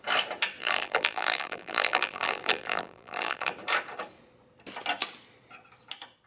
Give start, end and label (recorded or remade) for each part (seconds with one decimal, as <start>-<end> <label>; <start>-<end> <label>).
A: 0.0-0.6 recorded; 0.6-3.5 remade; 3.5-6.3 recorded